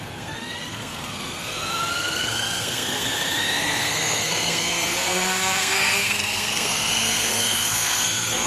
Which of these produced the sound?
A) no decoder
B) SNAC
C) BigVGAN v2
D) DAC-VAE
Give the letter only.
B